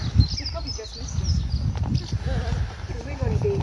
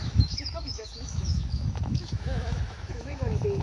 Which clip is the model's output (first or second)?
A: second